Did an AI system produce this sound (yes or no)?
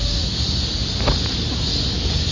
no